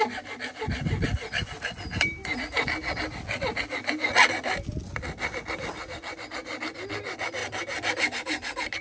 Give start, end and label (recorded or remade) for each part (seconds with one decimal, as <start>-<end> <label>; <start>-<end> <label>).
0.0-8.8 recorded